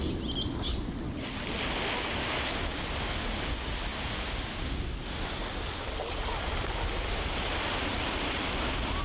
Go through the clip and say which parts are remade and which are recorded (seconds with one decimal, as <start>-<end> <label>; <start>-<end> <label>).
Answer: 0.0-9.0 recorded

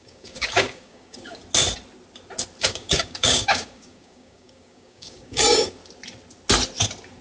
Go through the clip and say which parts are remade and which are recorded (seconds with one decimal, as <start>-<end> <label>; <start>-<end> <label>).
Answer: 0.0-1.4 remade; 1.4-2.6 recorded; 2.6-5.8 remade; 5.8-7.2 recorded

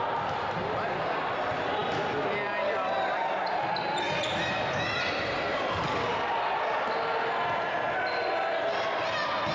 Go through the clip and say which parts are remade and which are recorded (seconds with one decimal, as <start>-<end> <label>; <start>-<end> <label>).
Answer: 0.0-9.5 recorded

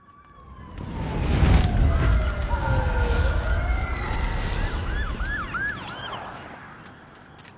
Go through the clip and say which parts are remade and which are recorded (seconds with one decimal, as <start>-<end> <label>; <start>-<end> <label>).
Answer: 0.0-7.6 recorded